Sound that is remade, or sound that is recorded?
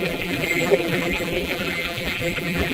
remade